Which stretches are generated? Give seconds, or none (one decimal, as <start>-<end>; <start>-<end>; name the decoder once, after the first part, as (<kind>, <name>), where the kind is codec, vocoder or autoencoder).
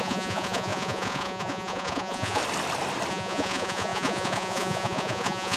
0.0-2.4 (vocoder, Vocos); 3.1-5.6